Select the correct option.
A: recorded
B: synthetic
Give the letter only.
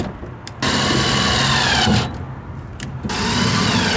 A